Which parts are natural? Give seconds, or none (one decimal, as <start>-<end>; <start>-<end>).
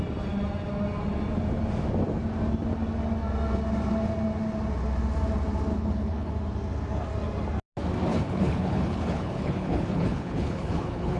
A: 0.0-5.7; 6.3-8.1